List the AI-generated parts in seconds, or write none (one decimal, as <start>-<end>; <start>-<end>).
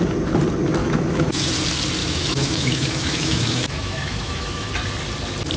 0.8-1.5; 2.0-4.7